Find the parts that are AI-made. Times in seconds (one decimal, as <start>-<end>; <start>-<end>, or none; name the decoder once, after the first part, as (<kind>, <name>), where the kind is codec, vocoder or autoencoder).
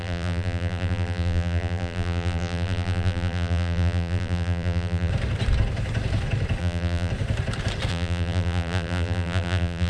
0.0-5.1 (vocoder, BigVGAN v2); 6.6-7.1; 7.9-9.9